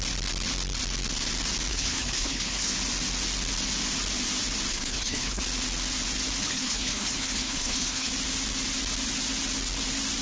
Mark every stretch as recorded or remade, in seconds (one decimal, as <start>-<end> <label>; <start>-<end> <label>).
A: 0.0-1.7 recorded; 1.7-2.7 remade; 2.7-4.7 recorded; 4.7-5.4 remade; 5.4-6.4 recorded; 6.4-8.1 remade; 8.1-10.2 recorded